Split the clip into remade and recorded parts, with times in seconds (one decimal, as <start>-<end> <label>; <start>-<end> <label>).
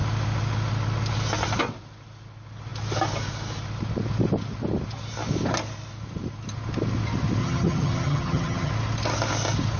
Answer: 0.0-7.4 recorded; 7.4-8.7 remade; 8.7-9.8 recorded